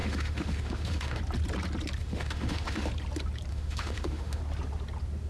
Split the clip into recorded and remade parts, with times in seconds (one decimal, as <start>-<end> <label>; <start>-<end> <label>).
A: 0.0-1.2 remade; 1.2-2.0 recorded; 2.0-2.9 remade; 2.9-3.5 recorded; 3.5-4.4 remade; 4.4-5.3 recorded